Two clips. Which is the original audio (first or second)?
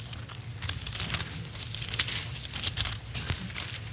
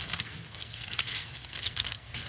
first